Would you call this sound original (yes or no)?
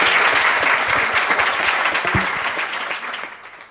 no